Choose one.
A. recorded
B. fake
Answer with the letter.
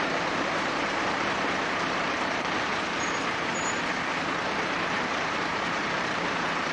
B